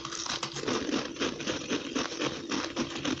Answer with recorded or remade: recorded